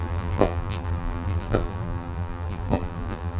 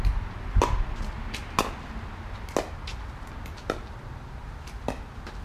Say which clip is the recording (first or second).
second